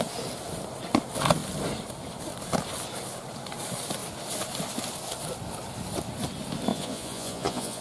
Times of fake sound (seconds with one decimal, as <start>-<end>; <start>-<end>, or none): 6.7-7.8